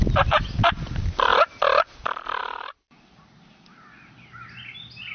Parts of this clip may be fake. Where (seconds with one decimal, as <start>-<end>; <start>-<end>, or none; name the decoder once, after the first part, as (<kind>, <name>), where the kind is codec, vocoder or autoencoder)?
none